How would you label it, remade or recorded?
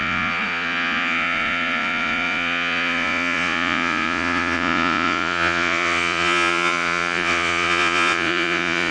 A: remade